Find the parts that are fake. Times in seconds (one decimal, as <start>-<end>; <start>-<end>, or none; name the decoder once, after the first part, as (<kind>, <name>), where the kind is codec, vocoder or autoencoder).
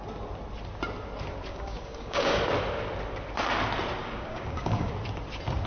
1.5-2.4 (codec, DAC); 4.0-4.9